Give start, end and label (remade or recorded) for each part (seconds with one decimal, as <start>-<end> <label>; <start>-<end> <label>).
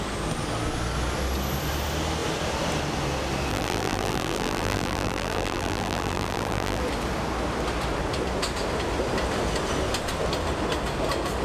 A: 0.0-3.5 recorded; 3.5-6.8 remade; 6.8-11.4 recorded